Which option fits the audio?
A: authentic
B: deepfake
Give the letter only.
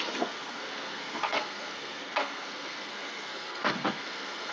B